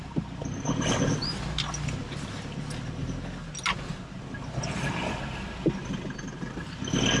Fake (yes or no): no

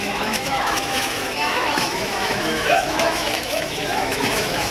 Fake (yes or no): yes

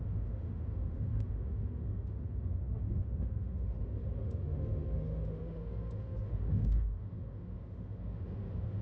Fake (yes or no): yes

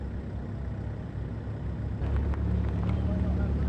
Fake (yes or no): no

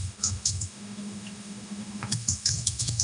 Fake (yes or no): yes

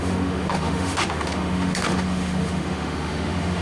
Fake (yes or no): yes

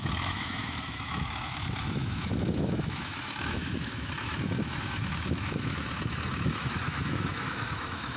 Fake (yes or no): yes